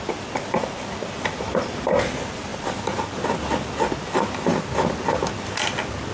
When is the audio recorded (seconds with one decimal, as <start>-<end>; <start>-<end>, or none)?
0.0-2.5; 3.4-6.1